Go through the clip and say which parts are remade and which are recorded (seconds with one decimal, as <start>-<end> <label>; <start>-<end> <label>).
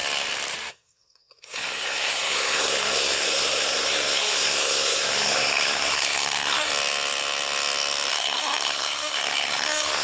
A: 0.0-0.7 recorded; 0.7-6.7 remade; 6.7-8.1 recorded; 8.1-10.0 remade